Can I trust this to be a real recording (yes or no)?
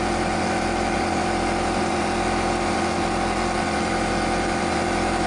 no